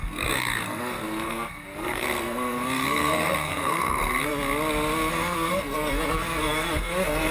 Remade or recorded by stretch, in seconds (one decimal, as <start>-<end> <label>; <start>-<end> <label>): 0.0-4.3 remade; 4.3-5.1 recorded; 5.1-7.3 remade